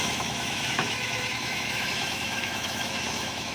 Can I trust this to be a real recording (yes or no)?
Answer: no